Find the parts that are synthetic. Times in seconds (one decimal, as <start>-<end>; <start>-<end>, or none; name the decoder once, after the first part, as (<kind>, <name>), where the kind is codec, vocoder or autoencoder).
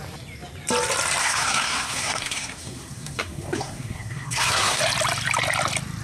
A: 1.2-4.8 (codec, SNAC)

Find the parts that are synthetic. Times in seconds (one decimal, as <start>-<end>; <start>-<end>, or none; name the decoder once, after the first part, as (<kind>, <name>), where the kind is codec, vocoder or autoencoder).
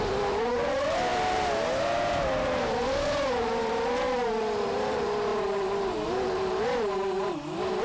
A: 0.0-7.8 (vocoder, BigVGAN v2)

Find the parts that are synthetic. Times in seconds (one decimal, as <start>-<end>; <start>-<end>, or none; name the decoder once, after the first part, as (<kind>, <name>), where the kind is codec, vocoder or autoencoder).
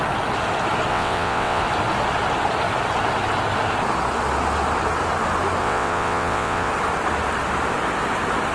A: 0.9-1.6 (vocoder, WaveNeXt); 5.6-6.7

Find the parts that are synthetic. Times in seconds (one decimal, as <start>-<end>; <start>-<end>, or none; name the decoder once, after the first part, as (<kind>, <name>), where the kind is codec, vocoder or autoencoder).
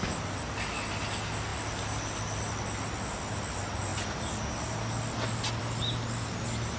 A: none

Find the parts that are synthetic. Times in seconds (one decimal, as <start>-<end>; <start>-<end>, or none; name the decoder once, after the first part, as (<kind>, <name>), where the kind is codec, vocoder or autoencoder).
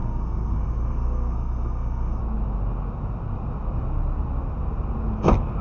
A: 0.0-2.2 (codec, SNAC)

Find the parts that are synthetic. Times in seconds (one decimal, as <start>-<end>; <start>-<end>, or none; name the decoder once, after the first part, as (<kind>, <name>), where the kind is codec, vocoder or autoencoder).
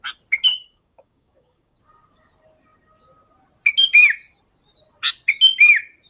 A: 0.5-1.8 (codec, DAC)